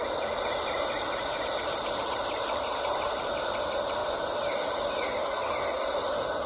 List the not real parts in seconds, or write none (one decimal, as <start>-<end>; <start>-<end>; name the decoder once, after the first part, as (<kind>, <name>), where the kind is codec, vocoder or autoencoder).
none